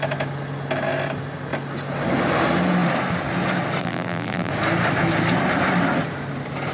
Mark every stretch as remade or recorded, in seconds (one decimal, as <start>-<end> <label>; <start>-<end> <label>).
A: 0.0-3.8 recorded; 3.8-4.5 remade; 4.5-6.7 recorded